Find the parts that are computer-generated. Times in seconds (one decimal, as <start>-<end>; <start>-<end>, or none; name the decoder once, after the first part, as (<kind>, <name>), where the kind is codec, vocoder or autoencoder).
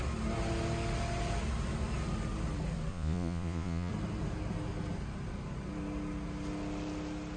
2.9-3.9 (vocoder, Vocos)